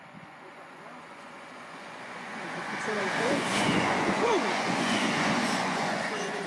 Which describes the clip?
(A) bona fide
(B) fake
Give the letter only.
B